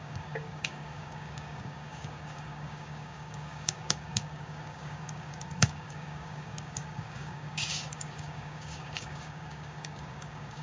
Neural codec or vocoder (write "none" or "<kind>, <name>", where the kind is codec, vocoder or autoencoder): codec, DAC